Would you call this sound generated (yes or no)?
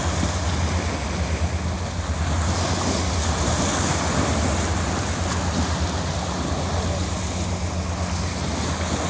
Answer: no